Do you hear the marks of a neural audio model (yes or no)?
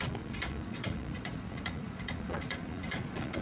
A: yes